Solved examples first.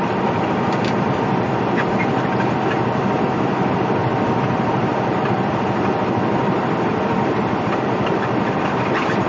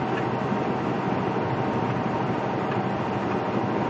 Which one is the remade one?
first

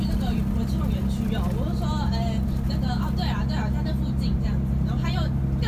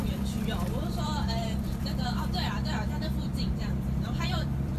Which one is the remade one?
second